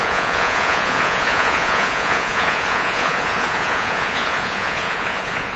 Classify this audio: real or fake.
fake